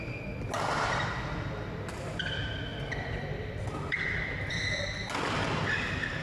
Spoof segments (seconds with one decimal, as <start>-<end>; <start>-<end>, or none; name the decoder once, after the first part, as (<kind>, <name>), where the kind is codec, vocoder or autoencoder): none

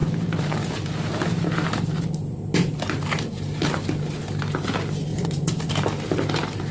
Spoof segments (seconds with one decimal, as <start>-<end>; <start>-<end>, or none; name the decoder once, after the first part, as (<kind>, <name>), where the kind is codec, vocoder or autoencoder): 0.0-3.8 (vocoder, BigVGAN v2); 5.1-5.7

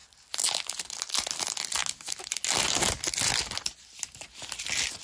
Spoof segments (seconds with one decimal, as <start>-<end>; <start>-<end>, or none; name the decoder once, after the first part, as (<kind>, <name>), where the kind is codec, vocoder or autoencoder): none

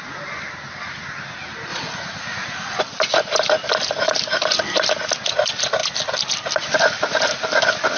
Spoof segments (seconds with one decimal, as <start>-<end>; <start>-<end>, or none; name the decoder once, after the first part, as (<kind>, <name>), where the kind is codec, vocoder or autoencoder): 1.7-2.8 (vocoder, Vocos)

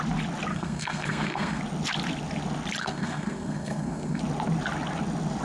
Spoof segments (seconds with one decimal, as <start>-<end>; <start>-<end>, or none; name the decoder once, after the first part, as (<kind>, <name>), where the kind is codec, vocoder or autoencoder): 0.5-1.6 (codec, SNAC); 2.8-4.2

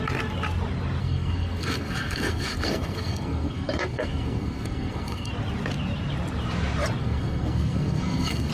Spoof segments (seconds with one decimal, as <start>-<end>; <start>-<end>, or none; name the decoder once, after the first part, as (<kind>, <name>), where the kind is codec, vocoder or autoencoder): 1.0-5.3 (codec, SNAC); 7.0-8.5

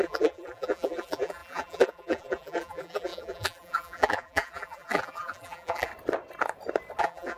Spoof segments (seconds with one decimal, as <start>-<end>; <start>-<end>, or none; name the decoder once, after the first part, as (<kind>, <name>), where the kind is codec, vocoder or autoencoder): 0.0-5.9 (vocoder, BigVGAN v2); 7.0-7.4

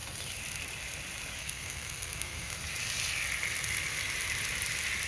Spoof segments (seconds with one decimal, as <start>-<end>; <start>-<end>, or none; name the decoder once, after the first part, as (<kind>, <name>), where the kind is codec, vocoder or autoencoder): 1.4-2.5 (codec, SNAC)